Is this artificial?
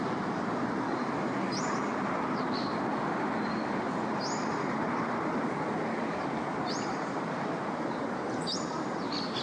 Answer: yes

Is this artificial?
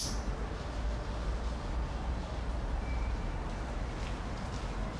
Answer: no